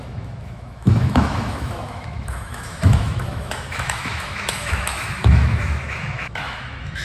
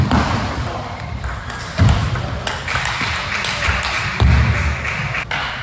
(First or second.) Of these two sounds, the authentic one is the second